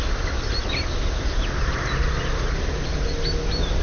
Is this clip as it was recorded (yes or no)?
yes